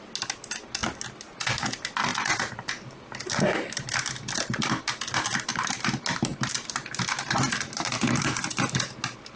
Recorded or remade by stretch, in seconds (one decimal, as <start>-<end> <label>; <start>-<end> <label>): 0.0-2.1 recorded; 2.1-2.7 remade; 2.7-9.4 recorded